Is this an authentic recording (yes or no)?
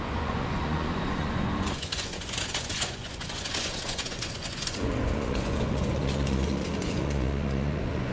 no